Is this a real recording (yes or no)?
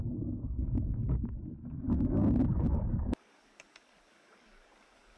no